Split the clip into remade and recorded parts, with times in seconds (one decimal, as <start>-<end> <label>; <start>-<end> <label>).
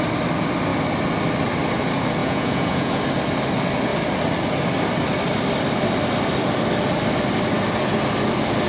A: 0.0-2.2 recorded; 2.2-3.0 remade; 3.0-8.7 recorded